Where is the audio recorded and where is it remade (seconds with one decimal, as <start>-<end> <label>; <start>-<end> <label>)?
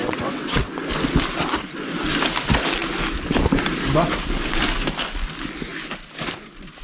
0.0-0.8 remade; 0.8-6.8 recorded